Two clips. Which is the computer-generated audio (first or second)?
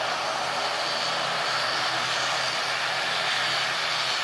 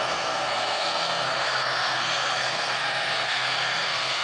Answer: second